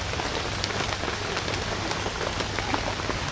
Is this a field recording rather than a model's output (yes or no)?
yes